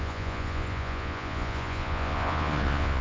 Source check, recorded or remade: remade